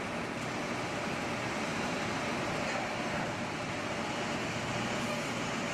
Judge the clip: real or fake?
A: real